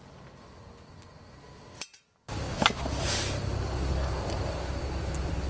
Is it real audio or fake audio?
real